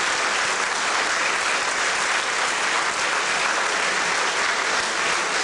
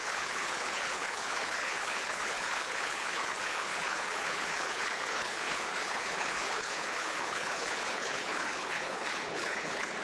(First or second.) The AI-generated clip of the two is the second